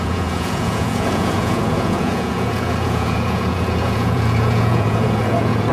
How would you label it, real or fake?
fake